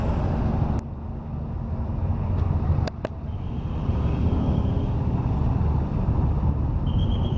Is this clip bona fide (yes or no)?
yes